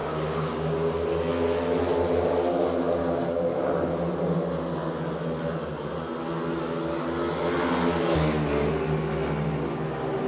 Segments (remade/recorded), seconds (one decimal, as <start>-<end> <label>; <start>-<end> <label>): 0.0-0.9 remade; 0.9-3.0 recorded; 3.0-3.7 remade; 3.7-10.3 recorded